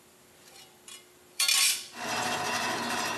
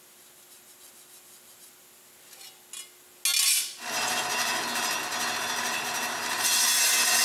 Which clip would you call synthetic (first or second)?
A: first